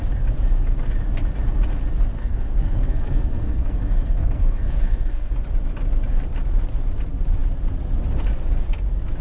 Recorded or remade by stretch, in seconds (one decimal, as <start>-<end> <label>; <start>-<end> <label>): 0.0-2.2 recorded; 2.2-5.3 remade; 5.3-9.2 recorded